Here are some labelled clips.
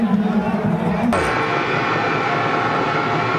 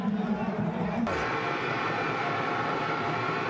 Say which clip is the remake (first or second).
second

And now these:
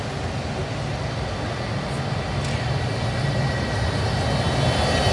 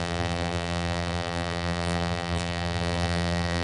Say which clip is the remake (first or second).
second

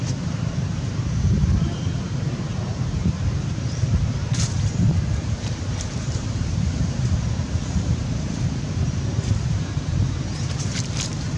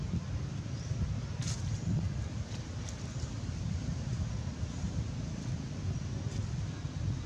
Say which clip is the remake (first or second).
first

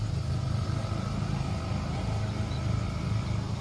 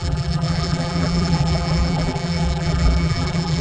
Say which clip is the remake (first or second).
second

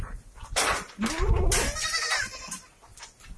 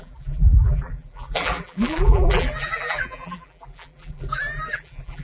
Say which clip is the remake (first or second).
second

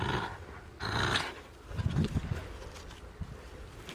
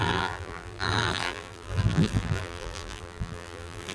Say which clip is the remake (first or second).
second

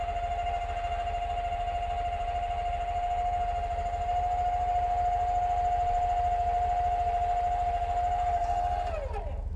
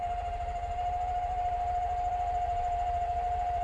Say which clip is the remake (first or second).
second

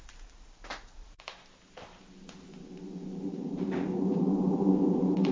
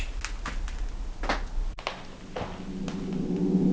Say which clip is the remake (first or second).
first